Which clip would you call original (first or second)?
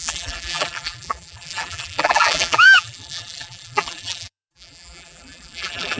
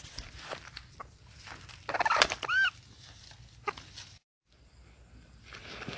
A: second